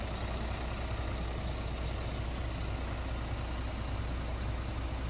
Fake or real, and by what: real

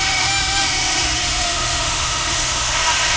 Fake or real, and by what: fake, autoencoder, DAC-VAE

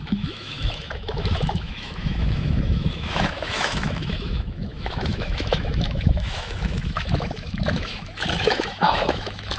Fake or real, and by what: fake, autoencoder, DAC-VAE